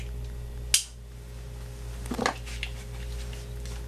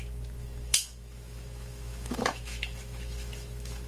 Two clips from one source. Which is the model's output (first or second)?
second